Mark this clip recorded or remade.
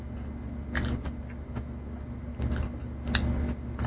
recorded